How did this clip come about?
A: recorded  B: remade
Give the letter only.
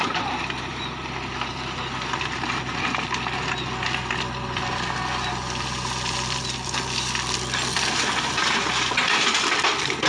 A